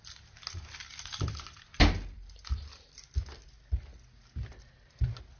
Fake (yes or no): no